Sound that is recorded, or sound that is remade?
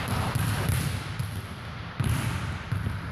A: remade